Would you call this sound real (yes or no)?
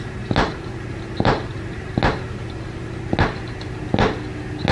yes